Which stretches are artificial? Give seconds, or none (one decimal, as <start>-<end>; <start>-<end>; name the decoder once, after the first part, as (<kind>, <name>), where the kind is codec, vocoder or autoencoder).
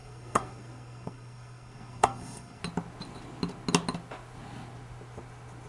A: 0.0-2.6 (codec, SNAC)